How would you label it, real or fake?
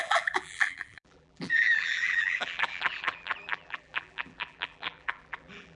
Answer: fake